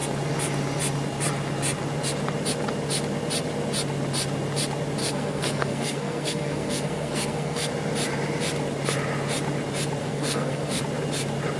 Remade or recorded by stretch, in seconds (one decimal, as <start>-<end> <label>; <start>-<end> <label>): 0.0-5.0 recorded; 5.0-7.7 remade; 7.7-10.0 recorded; 10.0-10.8 remade; 10.8-11.6 recorded